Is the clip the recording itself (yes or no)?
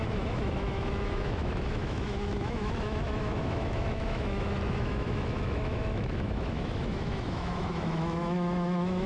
no